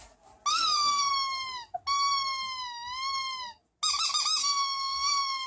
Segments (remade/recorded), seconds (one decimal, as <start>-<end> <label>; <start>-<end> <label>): 0.0-0.5 recorded; 0.5-1.1 remade; 1.1-4.4 recorded; 4.4-5.5 remade